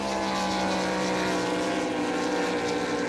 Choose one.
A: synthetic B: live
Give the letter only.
B